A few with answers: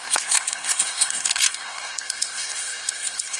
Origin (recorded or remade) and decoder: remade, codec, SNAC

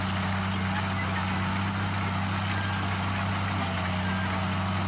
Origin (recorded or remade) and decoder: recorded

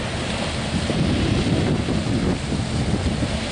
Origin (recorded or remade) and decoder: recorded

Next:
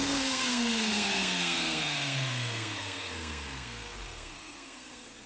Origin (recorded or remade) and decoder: remade, codec, SNAC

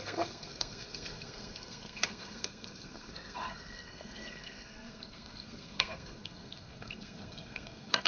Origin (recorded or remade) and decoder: remade, codec, SNAC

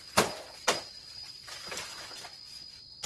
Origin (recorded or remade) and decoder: recorded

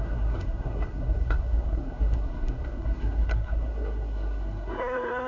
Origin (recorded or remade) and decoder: remade, codec, SNAC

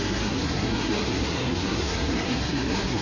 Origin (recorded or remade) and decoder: remade, codec, SNAC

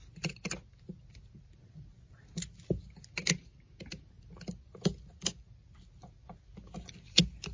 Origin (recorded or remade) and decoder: recorded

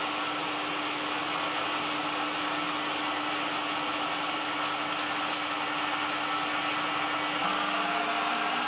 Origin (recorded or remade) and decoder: recorded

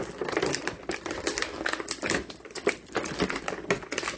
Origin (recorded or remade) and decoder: recorded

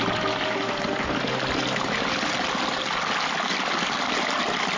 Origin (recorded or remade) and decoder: recorded